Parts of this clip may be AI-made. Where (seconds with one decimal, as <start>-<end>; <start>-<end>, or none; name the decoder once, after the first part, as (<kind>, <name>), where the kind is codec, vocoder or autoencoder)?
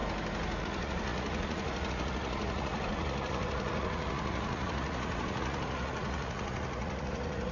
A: 0.6-7.5 (vocoder, Vocos)